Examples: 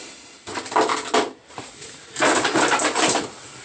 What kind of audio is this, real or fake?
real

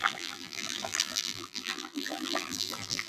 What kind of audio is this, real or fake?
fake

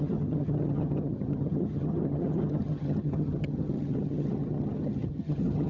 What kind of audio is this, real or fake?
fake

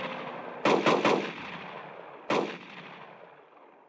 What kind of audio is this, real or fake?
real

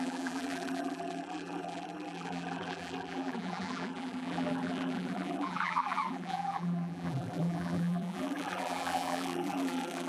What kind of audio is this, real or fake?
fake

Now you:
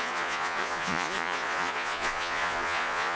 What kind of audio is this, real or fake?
fake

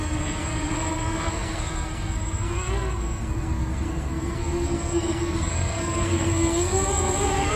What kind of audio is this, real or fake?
fake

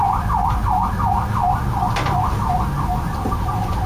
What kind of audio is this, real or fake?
real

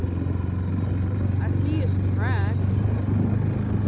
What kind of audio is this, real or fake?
real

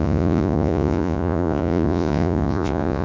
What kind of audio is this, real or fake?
fake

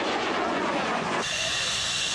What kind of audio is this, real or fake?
fake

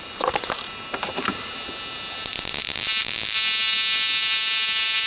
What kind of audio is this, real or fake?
fake